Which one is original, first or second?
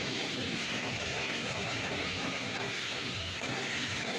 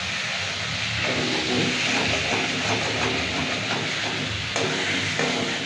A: second